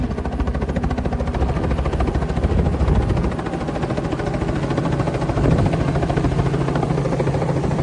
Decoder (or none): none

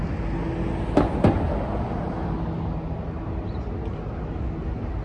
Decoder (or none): none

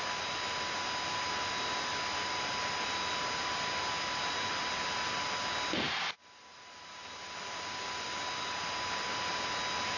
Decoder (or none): none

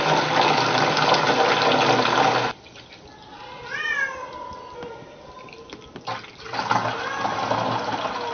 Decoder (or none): none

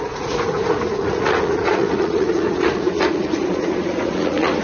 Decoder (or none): vocoder, Vocos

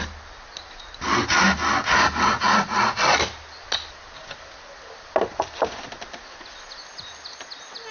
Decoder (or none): none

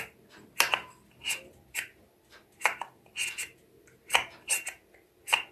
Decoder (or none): none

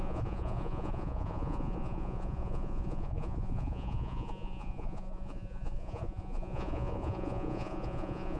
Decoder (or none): vocoder, Vocos